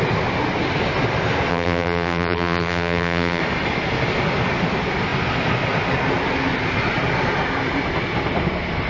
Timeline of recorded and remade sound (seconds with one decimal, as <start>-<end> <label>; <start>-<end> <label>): 0.0-1.5 recorded; 1.5-3.4 remade; 3.4-8.9 recorded